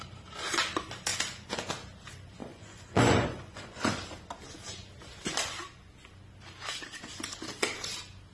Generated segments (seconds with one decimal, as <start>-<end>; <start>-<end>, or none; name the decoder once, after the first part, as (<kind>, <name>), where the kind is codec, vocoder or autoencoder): 1.1-1.7 (vocoder, Vocos); 2.4-4.0